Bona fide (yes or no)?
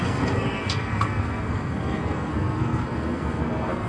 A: no